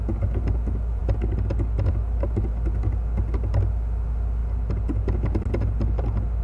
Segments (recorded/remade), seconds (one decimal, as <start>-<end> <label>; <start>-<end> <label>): 0.0-6.4 recorded